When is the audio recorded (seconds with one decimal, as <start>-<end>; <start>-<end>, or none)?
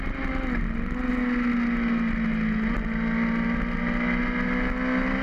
0.0-5.2